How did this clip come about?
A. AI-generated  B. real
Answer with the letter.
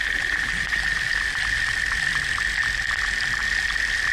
B